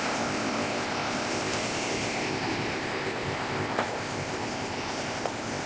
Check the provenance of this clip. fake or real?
fake